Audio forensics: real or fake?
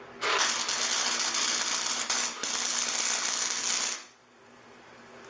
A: real